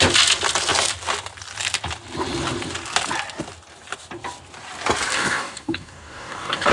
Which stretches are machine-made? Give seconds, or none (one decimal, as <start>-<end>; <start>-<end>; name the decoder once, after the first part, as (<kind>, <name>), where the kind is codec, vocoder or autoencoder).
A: 5.1-6.7 (codec, DAC)